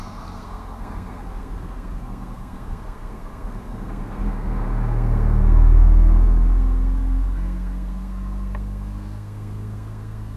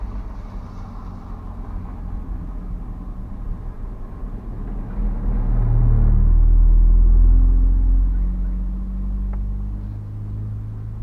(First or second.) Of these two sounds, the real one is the second